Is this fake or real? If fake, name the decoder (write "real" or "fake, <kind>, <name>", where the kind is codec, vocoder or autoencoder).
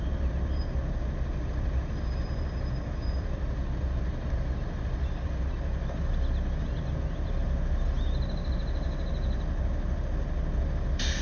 real